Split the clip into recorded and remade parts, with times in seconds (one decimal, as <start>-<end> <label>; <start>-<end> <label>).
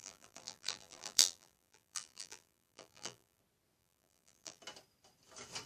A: 0.0-3.4 remade; 3.4-3.8 recorded; 3.8-4.6 remade; 4.6-5.7 recorded